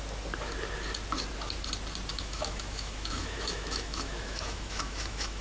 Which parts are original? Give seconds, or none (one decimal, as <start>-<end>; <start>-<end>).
0.0-2.1

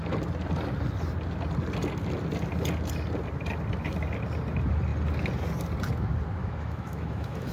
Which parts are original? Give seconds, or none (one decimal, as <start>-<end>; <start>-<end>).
0.0-6.4

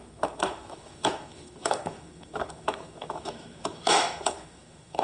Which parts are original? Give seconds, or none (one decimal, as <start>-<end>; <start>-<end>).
none

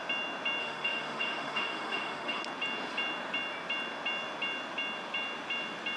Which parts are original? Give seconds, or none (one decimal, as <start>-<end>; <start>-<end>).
0.0-0.6; 2.4-6.0

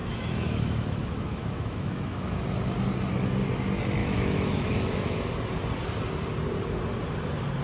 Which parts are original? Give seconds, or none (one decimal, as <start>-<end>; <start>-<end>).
2.4-4.0; 5.3-7.6

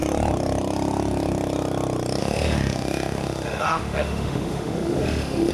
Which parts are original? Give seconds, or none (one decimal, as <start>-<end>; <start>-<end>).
0.0-2.2

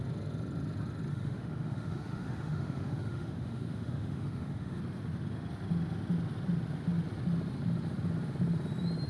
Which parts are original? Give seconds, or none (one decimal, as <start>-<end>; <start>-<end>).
0.0-1.1; 4.8-9.1

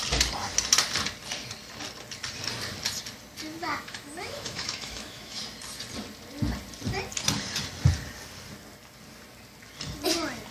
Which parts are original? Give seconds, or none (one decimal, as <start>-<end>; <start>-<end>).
0.0-3.6; 5.4-10.5